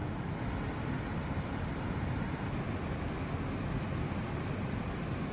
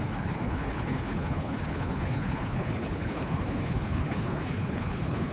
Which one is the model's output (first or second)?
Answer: second